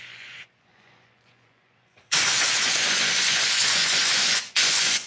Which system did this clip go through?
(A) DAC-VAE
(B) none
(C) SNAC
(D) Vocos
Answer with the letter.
D